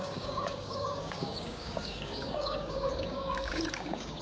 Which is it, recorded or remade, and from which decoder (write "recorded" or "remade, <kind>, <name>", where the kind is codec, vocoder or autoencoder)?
remade, codec, DAC